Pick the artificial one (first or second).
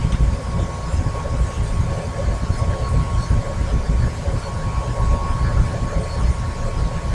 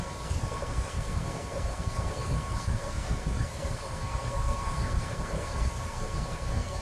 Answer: second